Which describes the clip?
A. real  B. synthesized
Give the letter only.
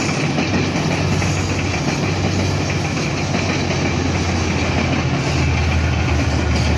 A